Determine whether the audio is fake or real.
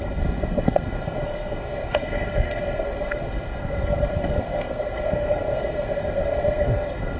fake